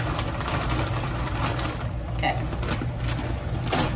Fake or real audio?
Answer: real